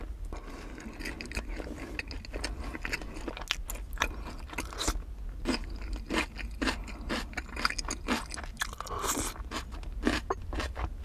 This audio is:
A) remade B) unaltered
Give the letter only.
B